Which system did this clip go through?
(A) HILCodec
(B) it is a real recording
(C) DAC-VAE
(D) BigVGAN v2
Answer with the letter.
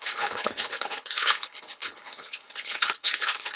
A